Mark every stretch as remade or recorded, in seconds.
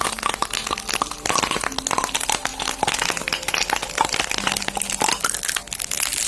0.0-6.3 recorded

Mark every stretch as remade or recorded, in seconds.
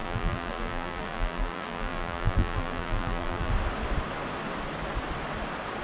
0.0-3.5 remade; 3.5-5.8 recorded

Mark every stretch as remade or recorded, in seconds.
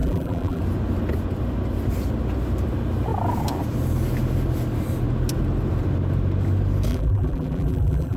0.0-0.6 remade; 0.6-6.9 recorded; 6.9-8.2 remade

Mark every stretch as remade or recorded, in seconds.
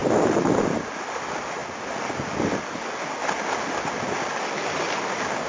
0.0-0.7 remade; 0.7-5.5 recorded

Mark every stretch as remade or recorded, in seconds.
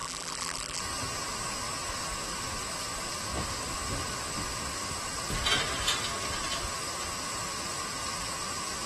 0.0-0.8 remade; 0.8-8.9 recorded